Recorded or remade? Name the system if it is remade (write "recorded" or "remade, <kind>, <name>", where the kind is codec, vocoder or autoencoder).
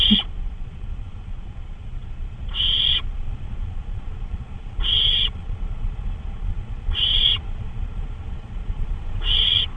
remade, vocoder, Vocos